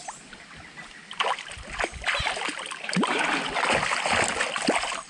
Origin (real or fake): real